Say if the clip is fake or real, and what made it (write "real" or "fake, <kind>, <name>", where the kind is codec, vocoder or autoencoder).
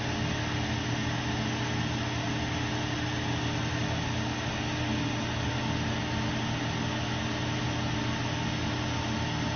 real